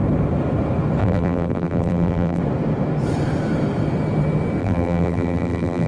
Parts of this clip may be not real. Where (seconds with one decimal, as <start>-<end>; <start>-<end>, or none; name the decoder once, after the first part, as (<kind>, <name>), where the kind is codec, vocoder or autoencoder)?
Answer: 1.0-2.4 (vocoder, BigVGAN v2); 4.6-5.9